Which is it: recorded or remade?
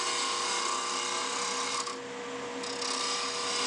recorded